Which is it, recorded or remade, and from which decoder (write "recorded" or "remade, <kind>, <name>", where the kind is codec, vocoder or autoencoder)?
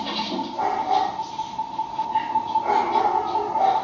recorded